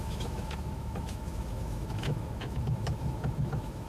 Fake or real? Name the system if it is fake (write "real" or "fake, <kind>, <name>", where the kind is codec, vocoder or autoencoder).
fake, autoencoder, DAC-VAE